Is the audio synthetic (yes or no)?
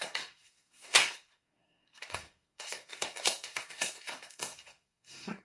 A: yes